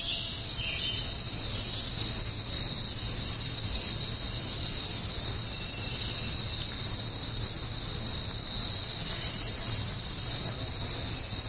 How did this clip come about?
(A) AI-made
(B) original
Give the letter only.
B